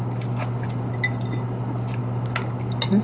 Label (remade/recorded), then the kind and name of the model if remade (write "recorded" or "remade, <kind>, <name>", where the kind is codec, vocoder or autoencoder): recorded